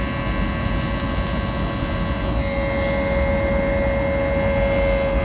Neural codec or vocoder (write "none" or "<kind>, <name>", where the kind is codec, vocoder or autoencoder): none